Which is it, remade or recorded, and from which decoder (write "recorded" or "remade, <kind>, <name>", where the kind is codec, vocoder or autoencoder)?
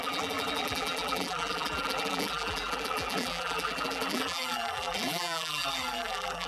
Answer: remade, vocoder, BigVGAN v2